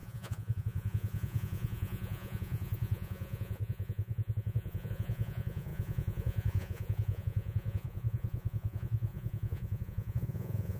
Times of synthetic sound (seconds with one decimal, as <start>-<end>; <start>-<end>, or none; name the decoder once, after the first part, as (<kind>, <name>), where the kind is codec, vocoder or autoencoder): 0.0-10.8 (vocoder, Vocos)